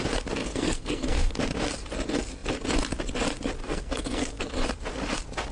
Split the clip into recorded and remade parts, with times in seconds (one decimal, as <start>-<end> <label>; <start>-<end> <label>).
0.0-0.4 recorded; 0.4-1.3 remade; 1.3-3.6 recorded; 3.6-4.4 remade; 4.4-5.5 recorded

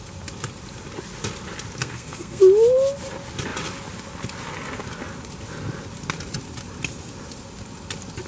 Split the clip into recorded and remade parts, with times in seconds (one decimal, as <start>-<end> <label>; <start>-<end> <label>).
0.0-1.8 recorded; 1.8-2.4 remade; 2.4-8.3 recorded

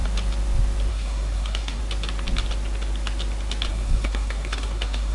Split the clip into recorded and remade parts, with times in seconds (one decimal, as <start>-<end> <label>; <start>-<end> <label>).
0.0-0.9 recorded; 0.9-1.8 remade; 1.8-3.7 recorded; 3.7-5.1 remade

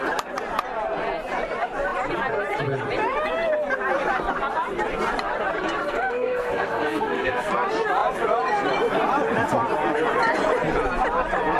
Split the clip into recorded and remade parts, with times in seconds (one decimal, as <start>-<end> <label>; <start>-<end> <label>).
0.0-5.8 recorded; 5.8-7.5 remade; 7.5-11.6 recorded